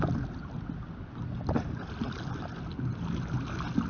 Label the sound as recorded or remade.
recorded